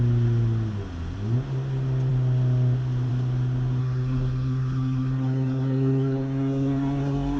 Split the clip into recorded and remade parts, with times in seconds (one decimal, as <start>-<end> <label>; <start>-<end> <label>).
0.0-3.8 recorded; 3.8-7.4 remade